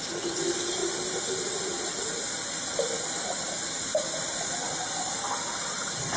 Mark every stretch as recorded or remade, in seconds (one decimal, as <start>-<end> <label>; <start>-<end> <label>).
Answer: 0.0-6.2 recorded